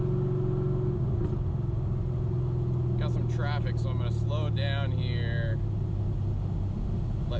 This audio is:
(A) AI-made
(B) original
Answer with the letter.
B